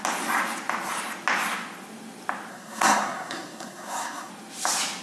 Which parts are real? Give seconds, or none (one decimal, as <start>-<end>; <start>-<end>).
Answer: 0.0-2.5; 4.3-5.0